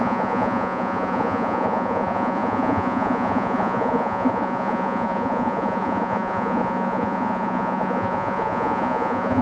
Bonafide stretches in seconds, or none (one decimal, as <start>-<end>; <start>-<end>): none